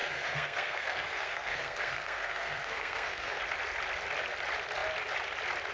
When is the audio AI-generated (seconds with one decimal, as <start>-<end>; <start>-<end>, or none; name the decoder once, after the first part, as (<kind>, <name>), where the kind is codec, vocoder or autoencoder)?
0.0-3.4 (codec, SNAC)

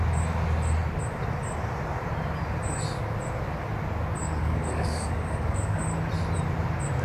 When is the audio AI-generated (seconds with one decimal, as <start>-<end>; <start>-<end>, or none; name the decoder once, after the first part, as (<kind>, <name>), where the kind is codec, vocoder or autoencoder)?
4.2-5.8 (codec, DAC)